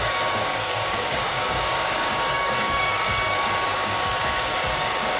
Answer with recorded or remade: remade